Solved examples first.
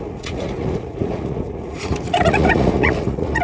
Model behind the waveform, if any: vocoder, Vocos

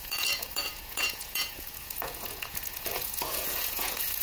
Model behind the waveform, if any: vocoder, Vocos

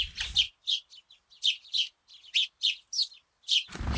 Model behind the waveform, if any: none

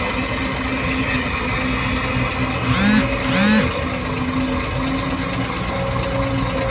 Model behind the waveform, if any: none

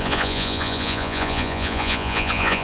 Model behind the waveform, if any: vocoder, Vocos